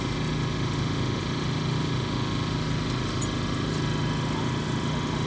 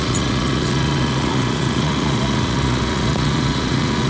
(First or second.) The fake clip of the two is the second